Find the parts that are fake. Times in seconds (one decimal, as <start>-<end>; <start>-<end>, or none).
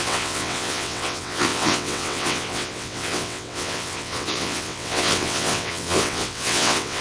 0.0-7.0